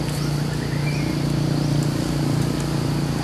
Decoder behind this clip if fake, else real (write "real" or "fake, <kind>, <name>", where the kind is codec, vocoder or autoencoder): real